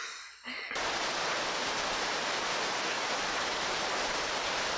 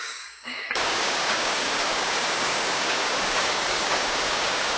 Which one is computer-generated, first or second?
second